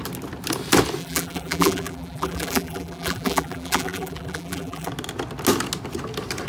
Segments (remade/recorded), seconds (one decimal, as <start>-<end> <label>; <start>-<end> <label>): 0.0-1.0 recorded; 1.0-4.9 remade; 4.9-6.5 recorded